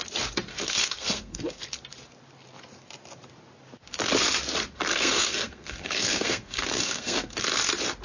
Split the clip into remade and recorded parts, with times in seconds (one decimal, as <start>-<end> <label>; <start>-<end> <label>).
0.0-0.5 recorded; 0.5-1.6 remade; 1.6-4.9 recorded; 4.9-7.4 remade; 7.4-8.0 recorded